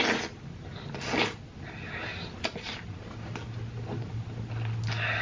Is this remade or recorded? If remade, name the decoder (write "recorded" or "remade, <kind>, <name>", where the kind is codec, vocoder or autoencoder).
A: recorded